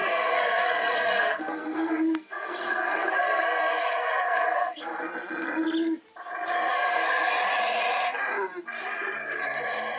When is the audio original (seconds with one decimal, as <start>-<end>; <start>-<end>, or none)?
5.0-6.7; 7.3-10.0